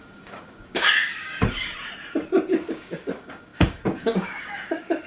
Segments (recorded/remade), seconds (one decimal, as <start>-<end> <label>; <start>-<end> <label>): 0.0-1.7 remade; 1.7-2.7 recorded; 2.7-5.1 remade